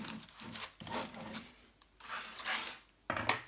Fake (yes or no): no